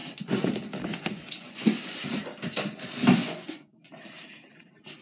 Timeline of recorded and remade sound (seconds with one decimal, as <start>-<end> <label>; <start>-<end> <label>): 0.0-0.5 remade; 0.5-0.9 recorded; 0.9-2.0 remade; 2.0-3.2 recorded; 3.2-3.9 remade; 3.9-5.0 recorded